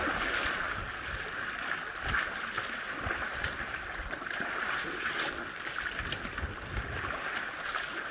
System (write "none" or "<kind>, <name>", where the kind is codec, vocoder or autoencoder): none